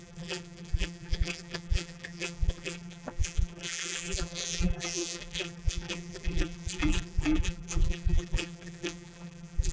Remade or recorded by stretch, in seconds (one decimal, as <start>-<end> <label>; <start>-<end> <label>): 0.0-9.7 remade